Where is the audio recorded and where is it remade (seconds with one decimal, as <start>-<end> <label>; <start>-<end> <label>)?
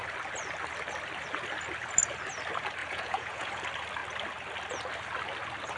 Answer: 0.0-2.8 recorded; 2.8-3.5 remade; 3.5-5.8 recorded